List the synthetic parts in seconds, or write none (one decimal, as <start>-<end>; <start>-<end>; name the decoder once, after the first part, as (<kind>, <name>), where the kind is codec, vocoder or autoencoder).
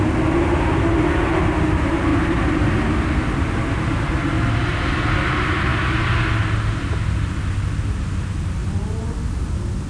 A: 2.1-2.6 (vocoder, BigVGAN v2)